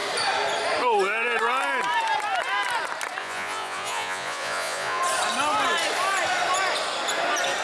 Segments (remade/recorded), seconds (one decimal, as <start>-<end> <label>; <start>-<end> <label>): 0.0-3.2 recorded; 3.2-5.0 remade; 5.0-7.6 recorded